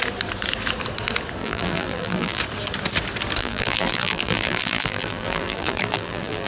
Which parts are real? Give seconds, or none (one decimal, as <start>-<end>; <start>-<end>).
0.0-1.4; 2.4-3.4